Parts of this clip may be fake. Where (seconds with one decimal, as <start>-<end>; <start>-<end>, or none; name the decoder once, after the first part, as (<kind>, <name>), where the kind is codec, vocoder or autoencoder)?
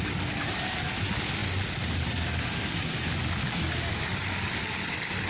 none